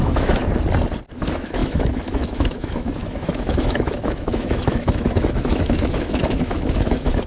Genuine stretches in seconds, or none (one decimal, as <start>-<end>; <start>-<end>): 0.4-1.1